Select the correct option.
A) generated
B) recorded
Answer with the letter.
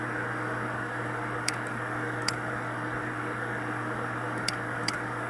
A